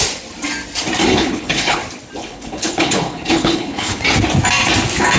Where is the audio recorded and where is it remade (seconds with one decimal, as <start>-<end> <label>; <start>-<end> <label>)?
0.0-1.1 recorded; 1.1-1.8 remade; 1.8-2.2 recorded; 2.2-4.0 remade; 4.0-5.2 recorded